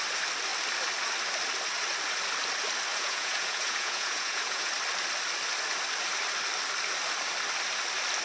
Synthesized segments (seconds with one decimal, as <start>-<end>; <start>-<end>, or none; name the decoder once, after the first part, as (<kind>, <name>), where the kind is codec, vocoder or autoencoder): 2.9-4.7 (vocoder, Vocos)